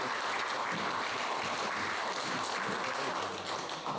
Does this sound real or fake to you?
real